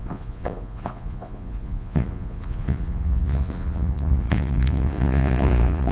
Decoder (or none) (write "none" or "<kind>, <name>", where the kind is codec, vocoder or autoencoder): vocoder, Vocos